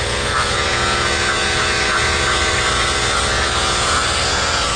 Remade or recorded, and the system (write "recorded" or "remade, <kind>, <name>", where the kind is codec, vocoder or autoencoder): remade, vocoder, Vocos